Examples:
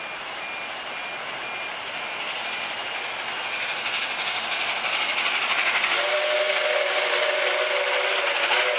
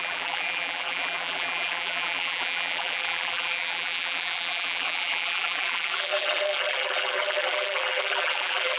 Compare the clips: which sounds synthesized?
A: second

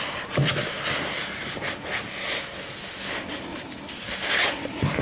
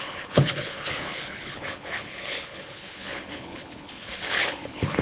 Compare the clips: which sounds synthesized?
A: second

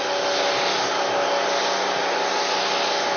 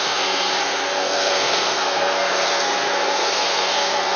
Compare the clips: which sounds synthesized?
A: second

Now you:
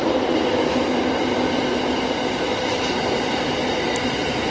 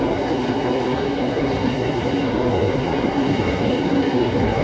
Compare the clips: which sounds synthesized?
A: second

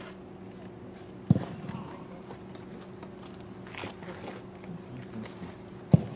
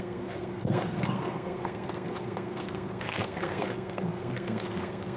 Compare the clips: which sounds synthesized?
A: second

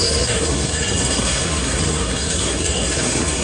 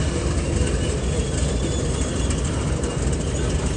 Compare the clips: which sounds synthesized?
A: first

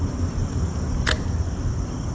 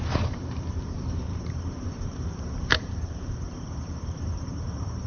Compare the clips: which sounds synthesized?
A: second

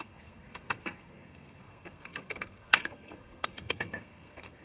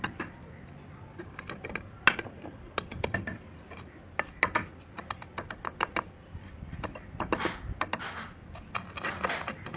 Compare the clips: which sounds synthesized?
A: first